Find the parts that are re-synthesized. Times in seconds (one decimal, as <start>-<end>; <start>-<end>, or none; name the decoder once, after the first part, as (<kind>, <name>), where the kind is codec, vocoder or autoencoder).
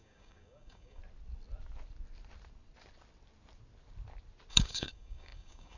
0.0-1.0 (codec, DAC); 4.5-5.8